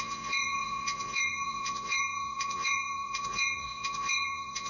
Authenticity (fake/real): fake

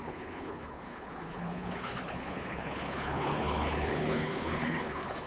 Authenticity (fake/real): fake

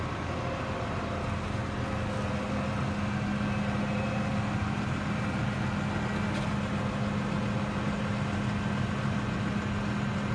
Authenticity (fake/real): real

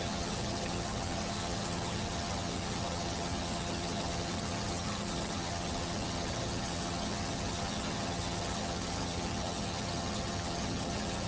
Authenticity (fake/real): fake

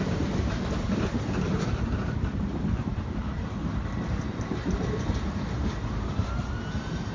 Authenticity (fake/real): fake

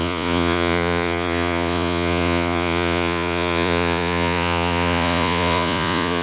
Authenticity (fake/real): fake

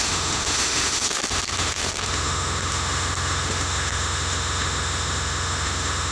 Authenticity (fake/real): fake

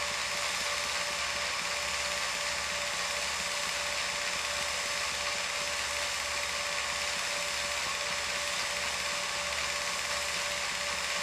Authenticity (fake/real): real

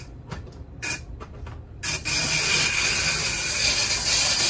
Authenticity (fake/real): fake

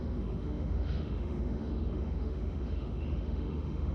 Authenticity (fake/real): fake